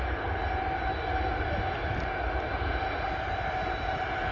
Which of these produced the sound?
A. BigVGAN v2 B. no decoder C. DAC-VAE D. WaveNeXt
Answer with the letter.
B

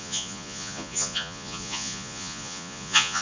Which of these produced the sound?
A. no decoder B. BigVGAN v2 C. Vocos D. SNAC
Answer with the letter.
C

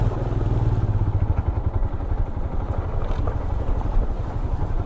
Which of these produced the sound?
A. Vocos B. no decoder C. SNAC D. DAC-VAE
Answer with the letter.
B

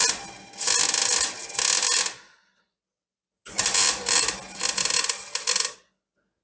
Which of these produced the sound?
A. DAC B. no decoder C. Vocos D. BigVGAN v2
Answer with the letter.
B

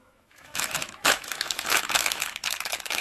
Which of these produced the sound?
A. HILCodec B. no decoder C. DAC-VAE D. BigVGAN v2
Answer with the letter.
C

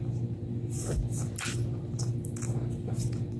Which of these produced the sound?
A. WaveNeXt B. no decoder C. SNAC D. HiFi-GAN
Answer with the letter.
B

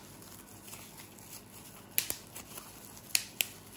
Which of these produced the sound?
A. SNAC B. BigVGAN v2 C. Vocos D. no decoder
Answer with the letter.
D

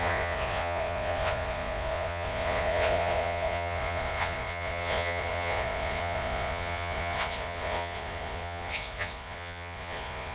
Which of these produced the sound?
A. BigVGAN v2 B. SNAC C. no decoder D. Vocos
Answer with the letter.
D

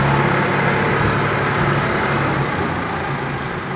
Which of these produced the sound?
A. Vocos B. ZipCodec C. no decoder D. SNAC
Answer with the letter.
C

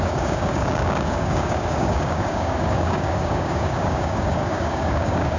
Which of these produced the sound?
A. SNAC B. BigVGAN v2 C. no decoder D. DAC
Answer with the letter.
D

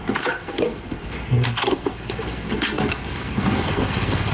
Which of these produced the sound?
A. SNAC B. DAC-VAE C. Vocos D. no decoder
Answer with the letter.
A